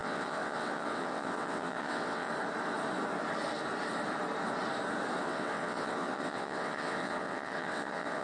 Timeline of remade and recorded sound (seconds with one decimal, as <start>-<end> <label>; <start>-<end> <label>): 0.0-2.3 remade; 2.3-5.2 recorded; 5.2-8.2 remade